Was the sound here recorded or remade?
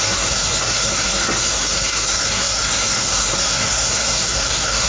remade